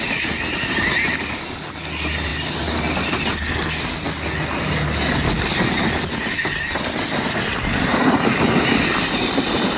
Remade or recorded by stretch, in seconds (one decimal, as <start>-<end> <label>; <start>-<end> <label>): 0.0-9.8 recorded